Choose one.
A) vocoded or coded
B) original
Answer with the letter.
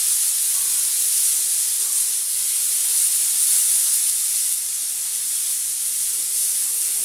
B